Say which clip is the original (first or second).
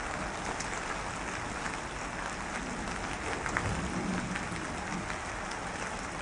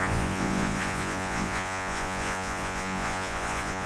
first